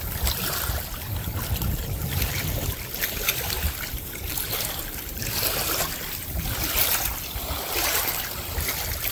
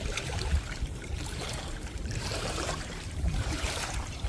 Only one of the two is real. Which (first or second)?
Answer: first